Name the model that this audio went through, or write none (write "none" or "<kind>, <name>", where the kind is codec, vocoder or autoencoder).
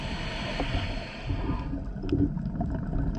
none